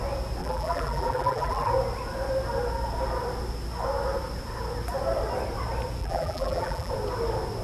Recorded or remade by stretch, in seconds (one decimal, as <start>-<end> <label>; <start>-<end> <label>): 0.0-0.4 recorded; 0.4-1.7 remade; 1.7-6.0 recorded; 6.0-6.9 remade; 6.9-7.6 recorded